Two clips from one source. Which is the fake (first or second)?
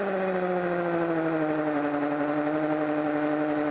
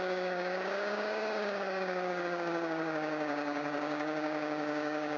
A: second